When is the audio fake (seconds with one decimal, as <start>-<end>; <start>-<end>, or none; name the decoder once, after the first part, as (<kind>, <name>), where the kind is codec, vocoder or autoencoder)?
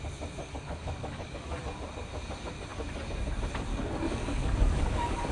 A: 0.4-1.6 (codec, DAC); 3.7-5.3